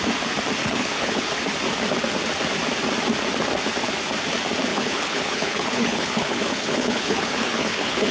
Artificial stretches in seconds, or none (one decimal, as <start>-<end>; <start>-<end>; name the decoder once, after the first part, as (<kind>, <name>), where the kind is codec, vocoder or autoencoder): 0.6-1.3 (codec, HILCodec); 4.7-8.1